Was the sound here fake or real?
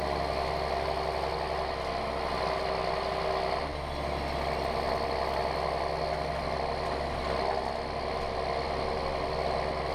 real